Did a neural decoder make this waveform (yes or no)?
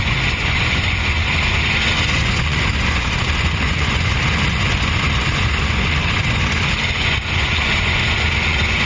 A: yes